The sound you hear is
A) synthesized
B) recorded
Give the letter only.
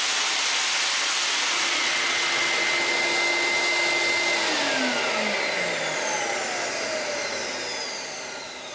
B